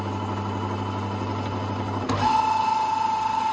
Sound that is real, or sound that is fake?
real